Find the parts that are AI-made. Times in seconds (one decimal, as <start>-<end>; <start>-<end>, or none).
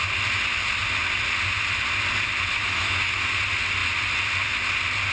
2.6-3.3